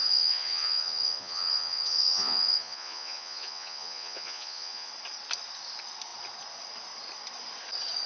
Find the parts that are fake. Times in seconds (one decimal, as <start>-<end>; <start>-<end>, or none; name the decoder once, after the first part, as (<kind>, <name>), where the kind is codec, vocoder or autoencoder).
0.0-4.9 (vocoder, Vocos)